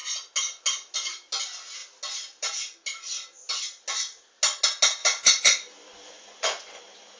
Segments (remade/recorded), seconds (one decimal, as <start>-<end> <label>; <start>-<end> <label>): 0.0-5.0 recorded; 5.0-6.8 remade; 6.8-7.2 recorded